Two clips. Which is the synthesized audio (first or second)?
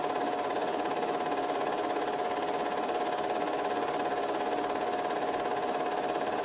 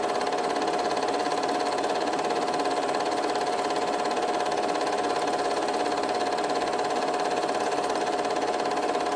second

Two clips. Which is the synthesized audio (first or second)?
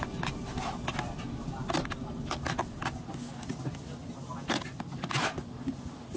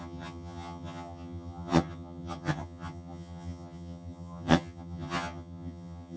second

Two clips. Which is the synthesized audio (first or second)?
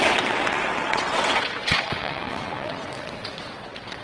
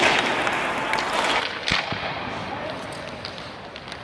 first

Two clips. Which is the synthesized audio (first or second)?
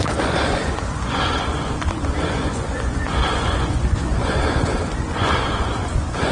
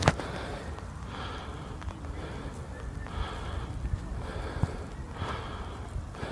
first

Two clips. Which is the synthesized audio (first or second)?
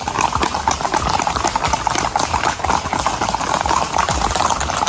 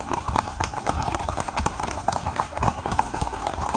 second